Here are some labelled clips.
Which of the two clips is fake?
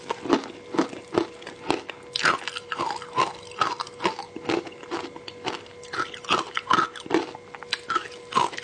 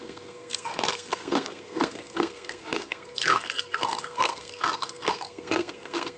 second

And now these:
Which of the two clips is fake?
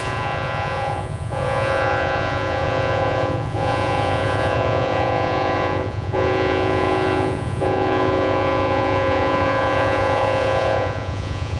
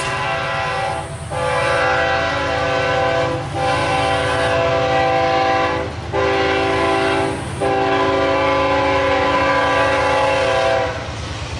first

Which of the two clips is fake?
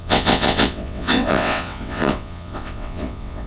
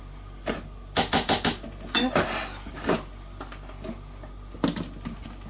first